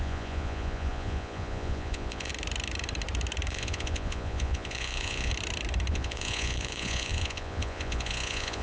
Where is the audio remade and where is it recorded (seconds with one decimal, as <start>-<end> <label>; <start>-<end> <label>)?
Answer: 0.0-2.3 remade; 2.3-3.5 recorded; 3.5-5.3 remade; 5.3-5.9 recorded; 5.9-8.6 remade